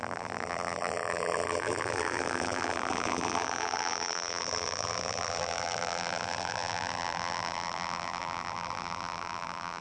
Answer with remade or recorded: remade